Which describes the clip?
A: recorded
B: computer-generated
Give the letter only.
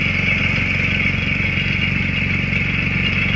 A